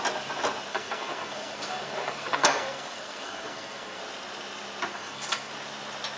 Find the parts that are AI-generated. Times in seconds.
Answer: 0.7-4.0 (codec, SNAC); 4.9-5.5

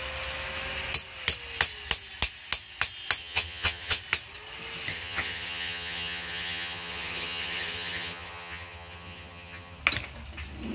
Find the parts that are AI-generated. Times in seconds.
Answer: 3.2-4.0 (vocoder, HiFi-GAN); 4.9-9.8

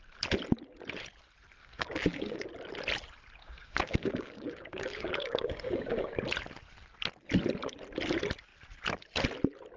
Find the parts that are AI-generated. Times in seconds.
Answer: 1.6-2.4 (codec, DAC); 3.4-6.2

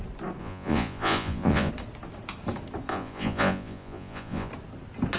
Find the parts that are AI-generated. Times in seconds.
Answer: 0.4-1.7 (vocoder, Vocos); 2.9-4.5

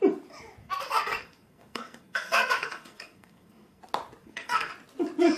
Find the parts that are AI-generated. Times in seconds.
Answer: 0.6-3.8 (codec, SNAC); 4.2-4.7

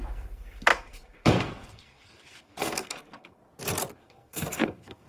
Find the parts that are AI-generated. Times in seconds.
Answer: 0.0-3.4 (codec, SNAC); 3.9-5.1

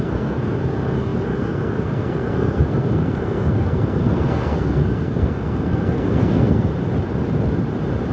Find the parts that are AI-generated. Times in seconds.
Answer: 0.0-6.7 (codec, SNAC)